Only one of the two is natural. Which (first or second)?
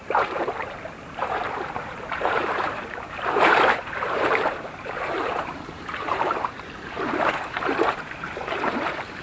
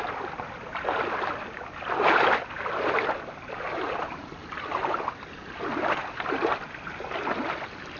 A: second